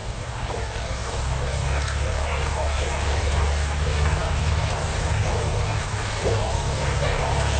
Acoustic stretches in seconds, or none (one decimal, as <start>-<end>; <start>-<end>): none